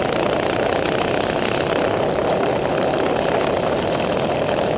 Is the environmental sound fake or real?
real